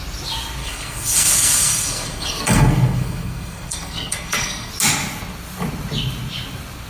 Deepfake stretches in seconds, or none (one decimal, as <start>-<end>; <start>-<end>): 0.6-4.7